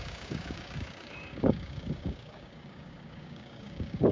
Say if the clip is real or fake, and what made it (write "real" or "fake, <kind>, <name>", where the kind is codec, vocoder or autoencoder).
fake, codec, DAC